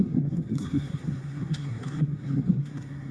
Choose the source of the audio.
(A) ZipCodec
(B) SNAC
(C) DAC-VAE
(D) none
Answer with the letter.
B